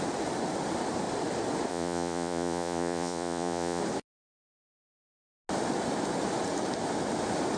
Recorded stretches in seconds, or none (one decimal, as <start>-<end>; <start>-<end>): 0.0-1.7; 3.8-7.6